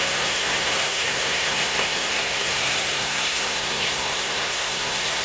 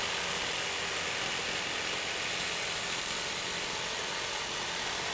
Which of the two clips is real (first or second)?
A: second